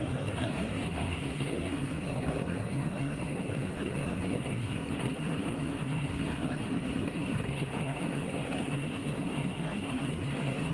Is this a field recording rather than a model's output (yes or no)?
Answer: no